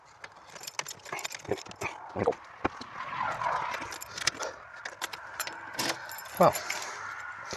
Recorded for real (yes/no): yes